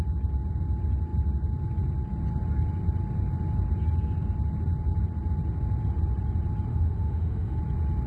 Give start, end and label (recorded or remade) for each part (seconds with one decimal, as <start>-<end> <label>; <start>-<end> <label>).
0.0-6.7 recorded; 6.7-7.6 remade; 7.6-8.1 recorded